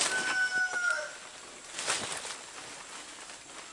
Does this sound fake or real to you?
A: real